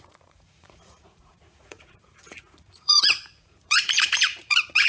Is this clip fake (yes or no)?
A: yes